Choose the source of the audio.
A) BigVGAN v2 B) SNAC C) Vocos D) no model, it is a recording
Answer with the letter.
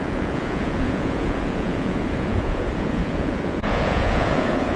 C